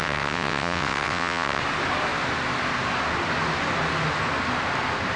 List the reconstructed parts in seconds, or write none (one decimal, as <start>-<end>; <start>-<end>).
0.0-1.6